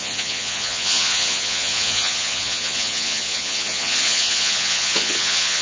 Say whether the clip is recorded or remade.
remade